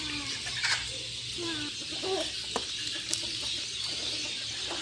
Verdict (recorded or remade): recorded